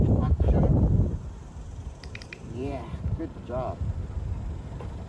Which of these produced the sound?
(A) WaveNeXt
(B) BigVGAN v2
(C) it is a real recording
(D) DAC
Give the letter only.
B